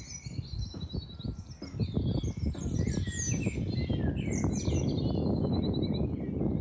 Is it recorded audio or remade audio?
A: recorded